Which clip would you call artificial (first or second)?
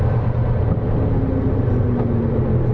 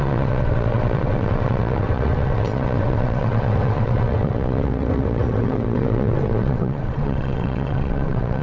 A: second